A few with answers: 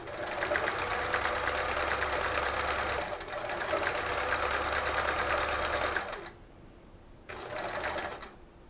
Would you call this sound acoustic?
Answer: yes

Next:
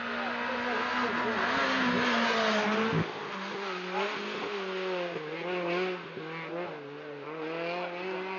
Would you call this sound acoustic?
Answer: yes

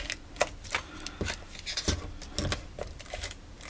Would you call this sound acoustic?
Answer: yes